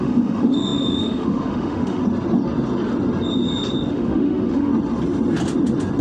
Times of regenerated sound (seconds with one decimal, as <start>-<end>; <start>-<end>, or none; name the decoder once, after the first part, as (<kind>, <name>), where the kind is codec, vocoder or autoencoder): 0.0-2.0 (autoencoder, DAC-VAE); 3.9-4.7